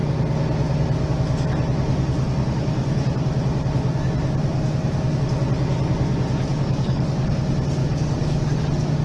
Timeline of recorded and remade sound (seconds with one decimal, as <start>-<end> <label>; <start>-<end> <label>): 0.0-6.5 recorded; 6.5-7.3 remade; 7.3-7.8 recorded; 7.8-8.6 remade; 8.6-9.0 recorded